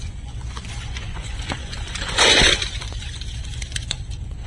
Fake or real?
fake